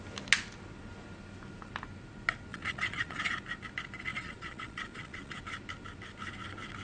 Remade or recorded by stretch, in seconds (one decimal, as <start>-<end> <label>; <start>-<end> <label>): 0.0-2.5 recorded; 2.5-3.3 remade; 3.3-4.1 recorded; 4.1-5.4 remade; 5.4-6.8 recorded